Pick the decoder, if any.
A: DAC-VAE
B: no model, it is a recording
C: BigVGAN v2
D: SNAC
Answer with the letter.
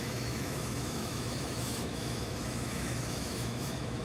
A